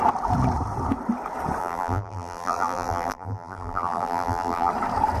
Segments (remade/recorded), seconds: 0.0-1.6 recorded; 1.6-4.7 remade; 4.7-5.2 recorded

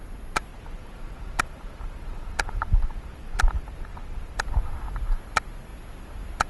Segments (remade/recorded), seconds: 0.0-0.5 recorded; 0.5-4.4 remade; 4.4-6.5 recorded

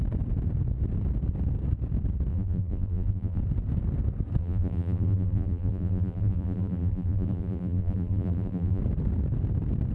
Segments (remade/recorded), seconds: 0.0-2.3 recorded; 2.3-3.4 remade; 3.4-4.4 recorded; 4.4-8.8 remade; 8.8-9.9 recorded

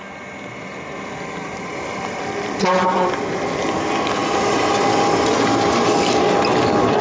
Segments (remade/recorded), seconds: 0.0-1.4 recorded; 1.4-2.2 remade; 2.2-4.2 recorded; 4.2-4.7 remade; 4.7-7.0 recorded

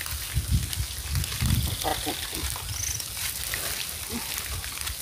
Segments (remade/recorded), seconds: 0.0-5.0 recorded

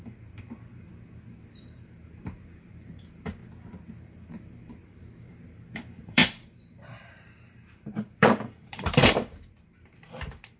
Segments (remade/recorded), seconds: 0.0-0.9 remade; 0.9-1.6 recorded; 1.6-3.4 remade; 3.4-4.0 recorded; 4.0-10.6 remade